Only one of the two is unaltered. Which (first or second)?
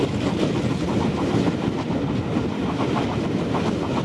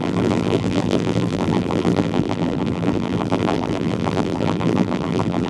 first